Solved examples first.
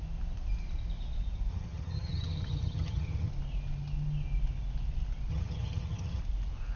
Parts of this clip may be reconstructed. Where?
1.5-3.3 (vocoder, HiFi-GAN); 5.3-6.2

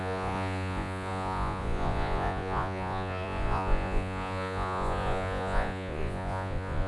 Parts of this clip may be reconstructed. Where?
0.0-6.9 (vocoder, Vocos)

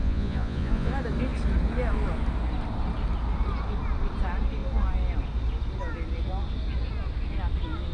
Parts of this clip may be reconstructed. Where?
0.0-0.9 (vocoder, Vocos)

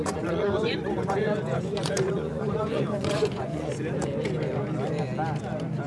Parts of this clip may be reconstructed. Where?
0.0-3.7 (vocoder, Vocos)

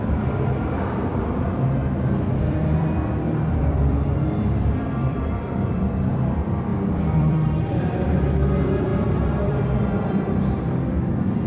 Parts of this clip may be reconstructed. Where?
0.0-1.8 (vocoder, BigVGAN v2); 2.5-11.5

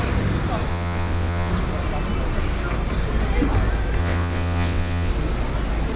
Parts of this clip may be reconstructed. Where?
0.7-1.5 (vocoder, WaveNeXt); 4.0-5.1

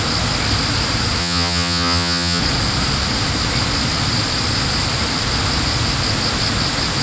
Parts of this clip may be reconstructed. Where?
1.2-2.4 (vocoder, HiFi-GAN)

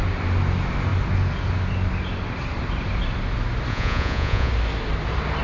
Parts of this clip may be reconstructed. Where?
3.7-4.5 (vocoder, Vocos)